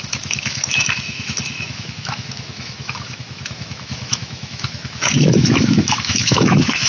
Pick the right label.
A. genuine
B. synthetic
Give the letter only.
B